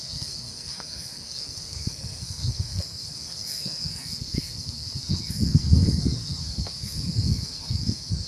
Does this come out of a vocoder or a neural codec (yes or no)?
yes